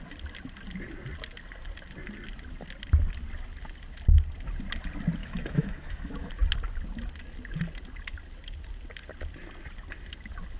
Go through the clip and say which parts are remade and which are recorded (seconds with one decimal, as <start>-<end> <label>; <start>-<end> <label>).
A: 0.0-5.2 recorded; 5.2-6.3 remade; 6.3-10.6 recorded